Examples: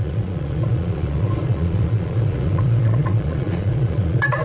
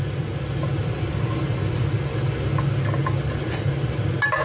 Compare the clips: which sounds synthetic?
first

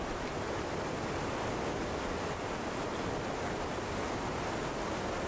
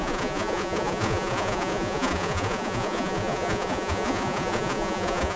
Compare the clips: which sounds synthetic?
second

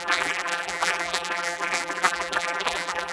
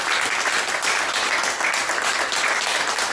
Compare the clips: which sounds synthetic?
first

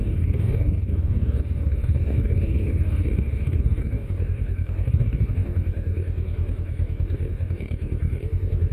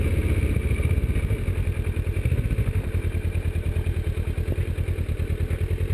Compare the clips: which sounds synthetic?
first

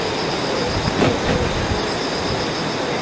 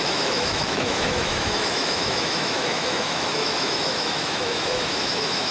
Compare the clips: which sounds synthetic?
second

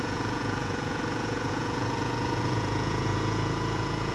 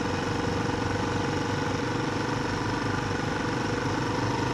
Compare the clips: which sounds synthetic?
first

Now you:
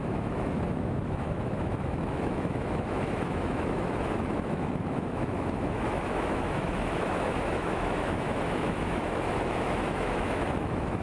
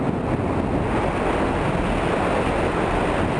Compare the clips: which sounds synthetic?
first